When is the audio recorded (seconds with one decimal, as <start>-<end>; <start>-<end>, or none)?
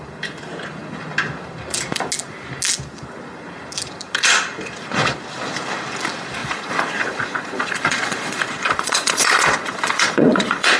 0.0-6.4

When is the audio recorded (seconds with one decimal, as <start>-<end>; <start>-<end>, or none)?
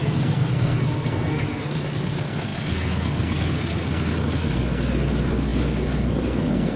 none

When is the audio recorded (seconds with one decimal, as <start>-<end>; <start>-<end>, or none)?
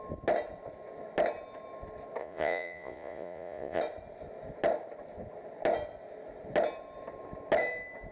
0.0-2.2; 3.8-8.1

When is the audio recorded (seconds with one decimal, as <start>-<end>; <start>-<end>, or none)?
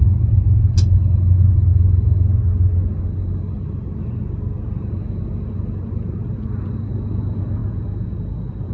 0.0-7.6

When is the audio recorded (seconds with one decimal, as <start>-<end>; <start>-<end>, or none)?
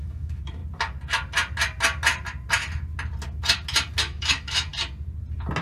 0.6-4.0; 4.7-5.6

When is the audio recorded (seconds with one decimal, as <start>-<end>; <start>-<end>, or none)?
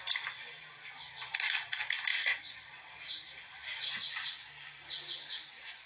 0.0-5.9